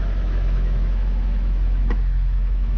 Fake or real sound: fake